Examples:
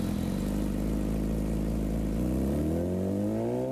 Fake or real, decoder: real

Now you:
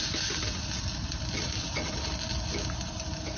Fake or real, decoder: real